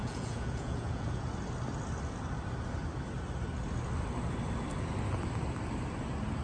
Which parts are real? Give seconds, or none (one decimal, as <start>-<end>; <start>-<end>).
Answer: 1.3-6.4